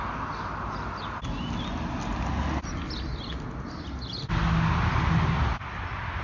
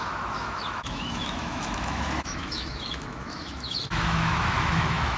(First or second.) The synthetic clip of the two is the second